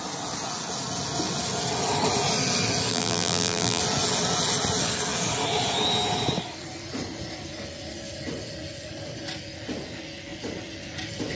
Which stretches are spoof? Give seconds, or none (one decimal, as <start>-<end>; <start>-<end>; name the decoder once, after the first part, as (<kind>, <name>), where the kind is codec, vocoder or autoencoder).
2.9-3.8 (vocoder, BigVGAN v2)